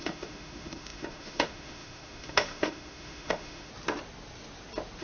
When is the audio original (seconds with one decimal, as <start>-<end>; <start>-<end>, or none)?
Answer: 3.7-5.0